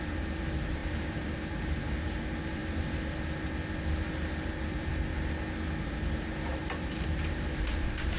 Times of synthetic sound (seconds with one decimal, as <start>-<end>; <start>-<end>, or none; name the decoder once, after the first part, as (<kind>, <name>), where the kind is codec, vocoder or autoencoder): 0.0-2.6 (vocoder, BigVGAN v2); 4.5-4.9; 5.8-8.2